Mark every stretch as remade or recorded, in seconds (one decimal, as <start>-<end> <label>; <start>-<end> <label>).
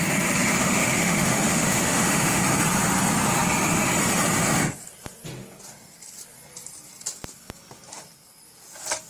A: 0.0-0.6 recorded; 0.6-2.4 remade; 2.4-9.1 recorded